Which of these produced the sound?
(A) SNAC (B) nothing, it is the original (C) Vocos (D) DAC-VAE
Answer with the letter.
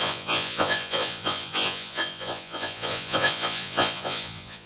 C